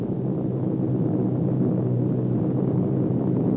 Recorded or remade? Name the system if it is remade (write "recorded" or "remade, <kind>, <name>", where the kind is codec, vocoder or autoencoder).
recorded